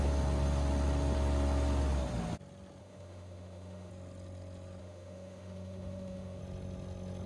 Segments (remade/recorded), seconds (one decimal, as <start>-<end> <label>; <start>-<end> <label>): 0.0-2.8 recorded; 2.8-3.9 remade; 3.9-4.8 recorded; 4.8-6.4 remade; 6.4-7.3 recorded